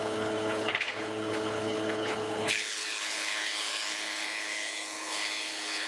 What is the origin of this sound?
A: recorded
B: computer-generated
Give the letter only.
B